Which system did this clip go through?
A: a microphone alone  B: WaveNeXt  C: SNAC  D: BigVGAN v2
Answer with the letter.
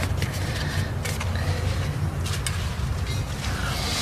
A